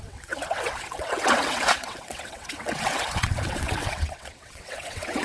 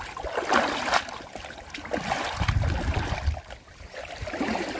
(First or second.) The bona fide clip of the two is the second